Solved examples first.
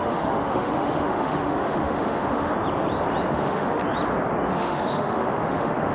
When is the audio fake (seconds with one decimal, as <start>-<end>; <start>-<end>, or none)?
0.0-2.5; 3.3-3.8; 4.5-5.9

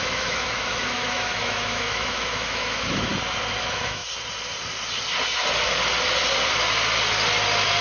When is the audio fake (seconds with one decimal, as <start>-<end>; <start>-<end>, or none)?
0.0-3.1; 3.6-4.0

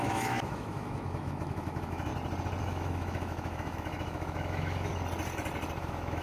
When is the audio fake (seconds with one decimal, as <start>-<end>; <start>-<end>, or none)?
0.0-2.1; 2.6-4.9; 5.8-6.2

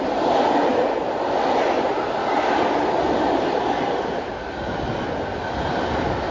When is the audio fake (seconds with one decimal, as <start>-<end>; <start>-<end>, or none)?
none

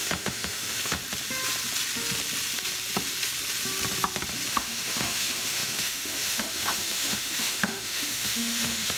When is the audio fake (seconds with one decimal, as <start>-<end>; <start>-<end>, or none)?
0.0-1.0; 4.5-9.0

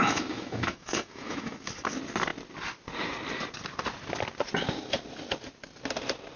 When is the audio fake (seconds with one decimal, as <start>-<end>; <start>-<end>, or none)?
0.0-1.7

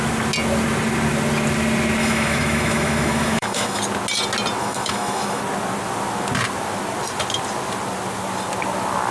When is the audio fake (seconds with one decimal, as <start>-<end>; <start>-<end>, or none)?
2.0-3.8; 4.6-5.4